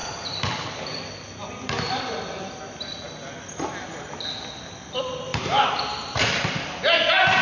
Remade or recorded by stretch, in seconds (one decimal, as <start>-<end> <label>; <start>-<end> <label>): 0.0-2.5 remade; 2.5-5.3 recorded; 5.3-6.8 remade; 6.8-7.4 recorded